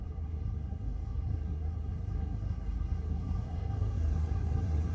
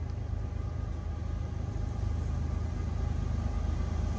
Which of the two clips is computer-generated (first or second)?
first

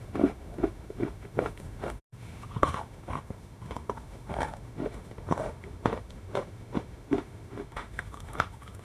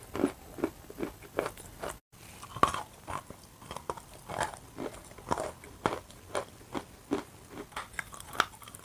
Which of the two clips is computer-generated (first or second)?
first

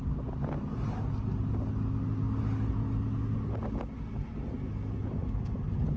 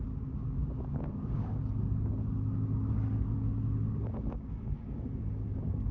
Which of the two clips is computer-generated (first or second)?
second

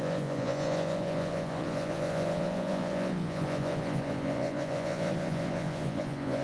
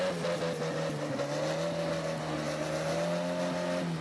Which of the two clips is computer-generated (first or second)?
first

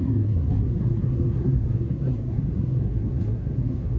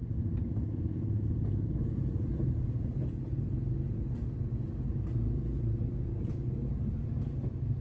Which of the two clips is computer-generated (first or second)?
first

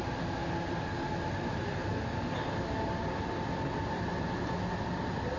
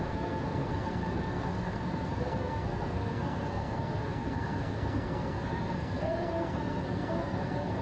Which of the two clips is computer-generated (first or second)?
second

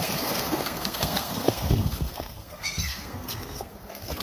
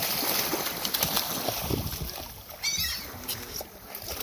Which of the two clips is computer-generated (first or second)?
first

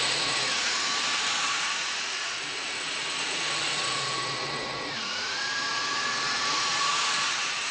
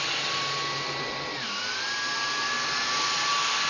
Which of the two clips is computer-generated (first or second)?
first